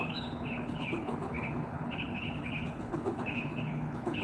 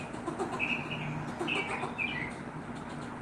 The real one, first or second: second